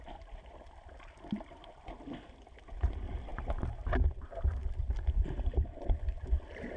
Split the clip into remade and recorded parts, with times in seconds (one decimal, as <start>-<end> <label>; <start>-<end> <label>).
0.0-6.8 recorded